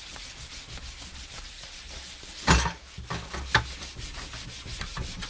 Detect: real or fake real